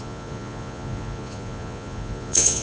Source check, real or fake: fake